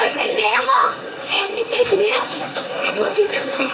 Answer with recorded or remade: remade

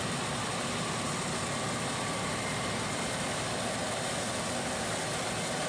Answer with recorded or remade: recorded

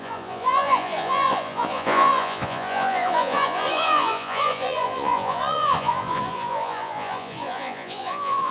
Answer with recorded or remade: remade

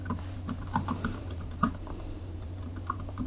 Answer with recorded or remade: remade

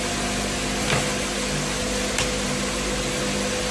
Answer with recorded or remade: recorded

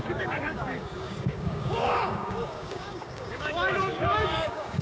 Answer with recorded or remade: remade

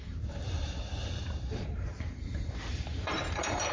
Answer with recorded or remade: remade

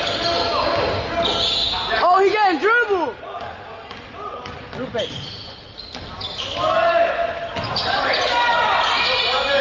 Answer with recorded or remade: recorded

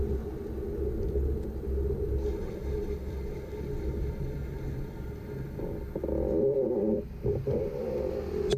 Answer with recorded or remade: recorded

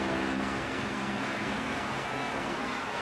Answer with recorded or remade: remade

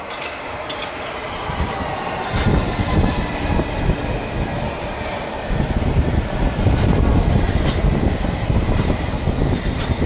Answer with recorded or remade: recorded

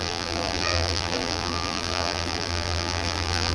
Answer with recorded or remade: remade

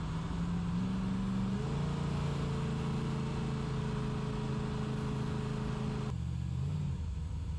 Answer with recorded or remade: recorded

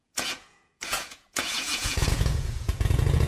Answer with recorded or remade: remade